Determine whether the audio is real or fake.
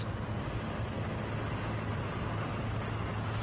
real